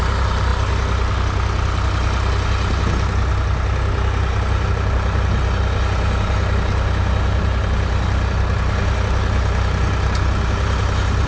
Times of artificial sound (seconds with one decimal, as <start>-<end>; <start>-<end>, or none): none